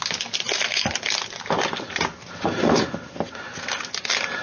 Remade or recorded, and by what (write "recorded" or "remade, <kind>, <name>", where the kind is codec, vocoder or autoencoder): recorded